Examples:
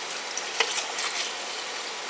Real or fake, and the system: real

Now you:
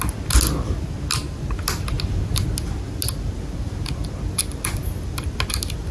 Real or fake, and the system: real